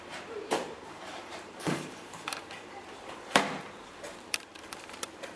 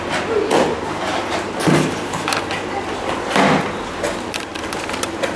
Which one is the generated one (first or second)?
first